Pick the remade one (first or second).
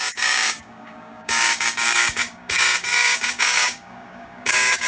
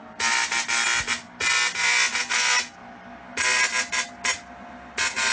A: first